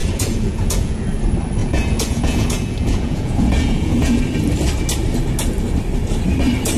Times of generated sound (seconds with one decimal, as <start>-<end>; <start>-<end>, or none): 0.0-1.0; 1.6-4.2